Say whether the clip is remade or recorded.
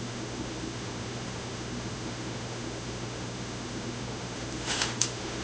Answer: remade